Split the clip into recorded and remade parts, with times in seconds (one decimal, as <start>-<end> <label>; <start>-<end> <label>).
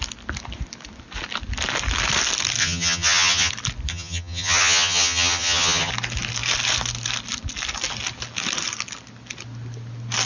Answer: 0.0-2.6 recorded; 2.6-3.5 remade; 3.5-3.9 recorded; 3.9-5.9 remade; 5.9-10.3 recorded